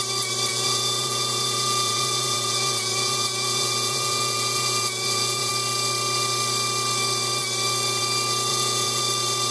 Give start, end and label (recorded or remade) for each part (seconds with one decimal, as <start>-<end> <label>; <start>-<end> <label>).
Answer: 0.0-0.5 recorded; 0.5-5.5 remade; 5.5-8.5 recorded; 8.5-9.0 remade; 9.0-9.5 recorded